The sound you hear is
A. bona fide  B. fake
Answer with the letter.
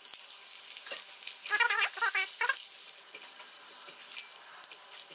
A